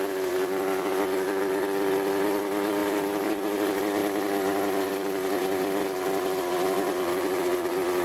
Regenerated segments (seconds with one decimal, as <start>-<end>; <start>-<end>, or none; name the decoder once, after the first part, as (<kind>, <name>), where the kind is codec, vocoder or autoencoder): 2.8-3.3 (vocoder, BigVGAN v2); 4.0-5.8